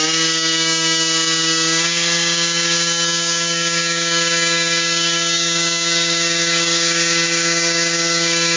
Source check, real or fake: fake